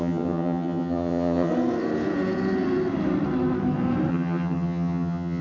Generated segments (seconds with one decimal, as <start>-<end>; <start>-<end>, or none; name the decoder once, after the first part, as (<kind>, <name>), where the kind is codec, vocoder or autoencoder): 0.0-1.5 (vocoder, HiFi-GAN); 4.1-5.4